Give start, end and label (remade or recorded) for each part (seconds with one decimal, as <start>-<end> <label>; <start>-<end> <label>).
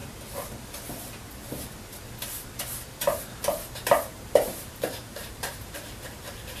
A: 0.0-3.2 recorded; 3.2-6.6 remade